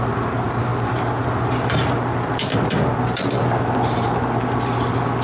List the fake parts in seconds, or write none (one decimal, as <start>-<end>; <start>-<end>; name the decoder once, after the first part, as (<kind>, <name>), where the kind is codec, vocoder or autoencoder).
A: none